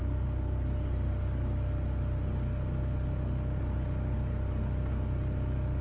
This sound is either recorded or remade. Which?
recorded